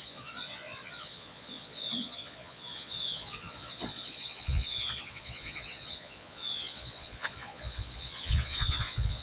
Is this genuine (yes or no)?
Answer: no